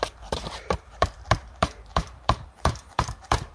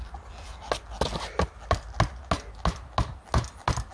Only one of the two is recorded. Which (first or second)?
second